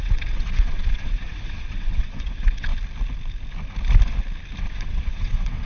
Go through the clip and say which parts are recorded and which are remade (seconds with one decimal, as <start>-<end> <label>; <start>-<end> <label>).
0.0-2.7 remade; 2.7-4.6 recorded; 4.6-5.7 remade